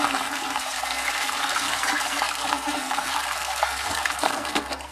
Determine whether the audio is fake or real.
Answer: fake